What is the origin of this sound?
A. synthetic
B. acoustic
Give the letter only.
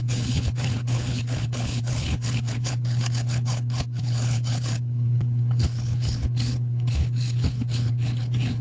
A